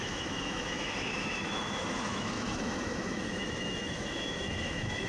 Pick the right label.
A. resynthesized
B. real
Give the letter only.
A